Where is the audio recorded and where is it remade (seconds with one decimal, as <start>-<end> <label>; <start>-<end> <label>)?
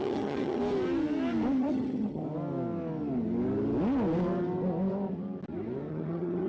0.0-0.6 remade; 0.6-1.6 recorded; 1.6-2.2 remade; 2.2-5.9 recorded; 5.9-6.5 remade